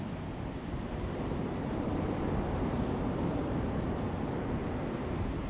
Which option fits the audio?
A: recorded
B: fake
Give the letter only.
B